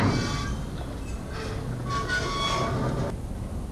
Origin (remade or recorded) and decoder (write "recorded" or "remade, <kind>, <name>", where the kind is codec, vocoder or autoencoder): recorded